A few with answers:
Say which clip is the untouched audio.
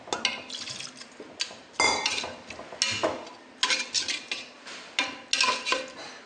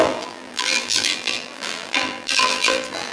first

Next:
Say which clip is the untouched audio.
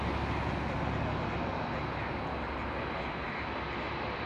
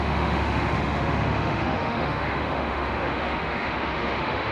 first